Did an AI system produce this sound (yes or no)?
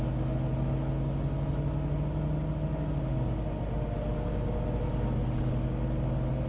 no